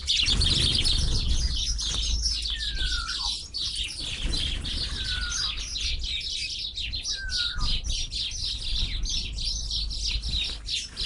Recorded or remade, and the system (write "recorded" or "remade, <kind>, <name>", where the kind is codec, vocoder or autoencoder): recorded